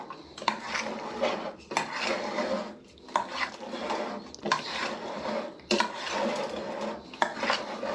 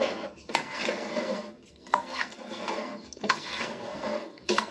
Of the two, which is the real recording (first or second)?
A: first